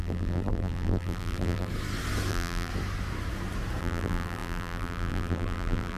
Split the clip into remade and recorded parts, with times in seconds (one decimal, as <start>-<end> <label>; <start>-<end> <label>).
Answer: 0.0-1.7 remade; 1.7-2.3 recorded; 2.3-2.7 remade; 2.7-3.8 recorded; 3.8-6.0 remade